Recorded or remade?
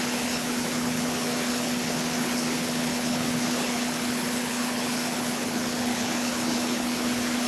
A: remade